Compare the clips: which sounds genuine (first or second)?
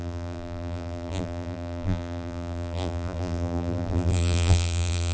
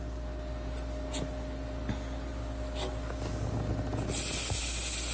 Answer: second